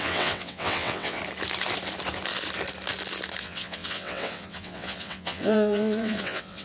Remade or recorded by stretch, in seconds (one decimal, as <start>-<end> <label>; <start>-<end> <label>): 0.0-1.2 remade; 1.2-3.4 recorded; 3.4-6.6 remade